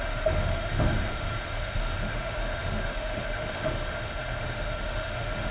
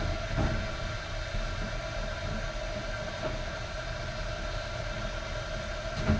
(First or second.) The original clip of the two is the second